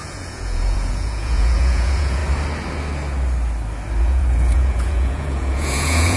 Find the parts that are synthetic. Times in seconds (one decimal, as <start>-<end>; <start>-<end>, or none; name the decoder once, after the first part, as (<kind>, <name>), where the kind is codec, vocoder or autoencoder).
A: 0.0-2.2 (vocoder, Vocos); 4.0-6.2